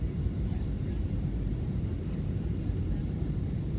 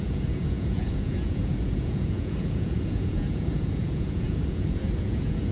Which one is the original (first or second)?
first